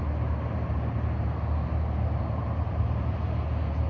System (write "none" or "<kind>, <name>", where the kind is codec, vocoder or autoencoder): none